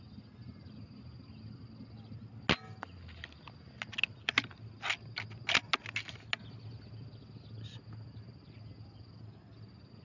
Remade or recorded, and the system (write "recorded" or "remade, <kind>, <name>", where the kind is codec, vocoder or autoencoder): recorded